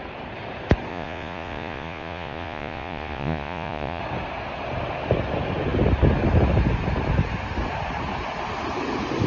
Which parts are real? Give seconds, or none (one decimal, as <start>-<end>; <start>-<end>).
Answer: 0.0-0.9; 4.0-9.3